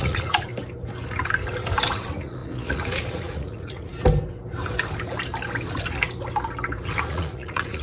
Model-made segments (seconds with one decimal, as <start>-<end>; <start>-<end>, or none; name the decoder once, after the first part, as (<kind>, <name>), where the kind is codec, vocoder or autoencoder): 0.0-0.5 (vocoder, Vocos); 1.9-3.9; 7.1-7.8